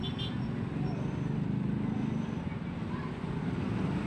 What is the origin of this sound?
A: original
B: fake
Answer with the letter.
A